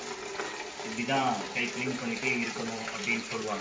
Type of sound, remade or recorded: recorded